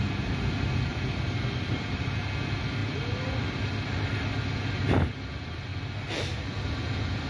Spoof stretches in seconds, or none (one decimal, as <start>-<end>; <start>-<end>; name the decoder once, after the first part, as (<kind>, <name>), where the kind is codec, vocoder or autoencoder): 0.9-2.0 (vocoder, BigVGAN v2); 2.8-4.4